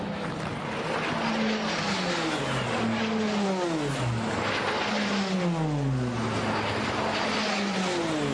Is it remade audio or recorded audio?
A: recorded